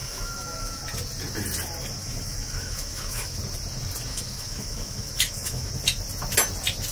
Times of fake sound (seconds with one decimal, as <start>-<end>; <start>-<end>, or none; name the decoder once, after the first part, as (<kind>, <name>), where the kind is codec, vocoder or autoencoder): 0.0-0.8 (autoencoder, DAC-VAE); 2.0-3.4; 4.1-5.7